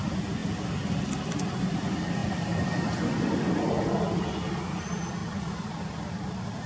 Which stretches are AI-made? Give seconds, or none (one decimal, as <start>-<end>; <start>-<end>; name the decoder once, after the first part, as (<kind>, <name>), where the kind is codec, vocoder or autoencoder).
none